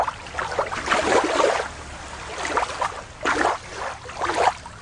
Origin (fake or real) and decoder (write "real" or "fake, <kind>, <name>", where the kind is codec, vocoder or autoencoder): real